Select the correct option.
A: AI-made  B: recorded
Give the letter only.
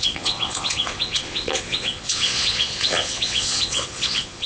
A